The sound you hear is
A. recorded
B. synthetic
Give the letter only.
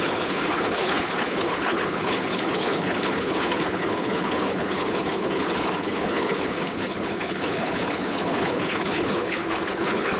B